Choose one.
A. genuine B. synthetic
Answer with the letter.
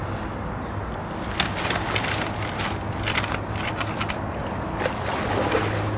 A